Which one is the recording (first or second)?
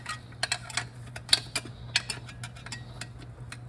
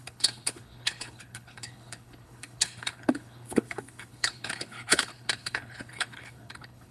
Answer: first